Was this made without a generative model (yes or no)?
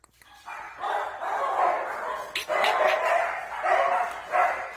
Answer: yes